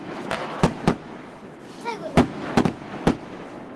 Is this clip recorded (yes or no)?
no